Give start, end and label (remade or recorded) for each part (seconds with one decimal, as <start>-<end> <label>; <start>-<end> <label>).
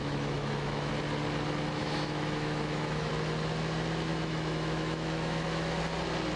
0.0-0.9 remade; 0.9-1.8 recorded; 1.8-3.1 remade; 3.1-4.1 recorded; 4.1-5.8 remade; 5.8-6.4 recorded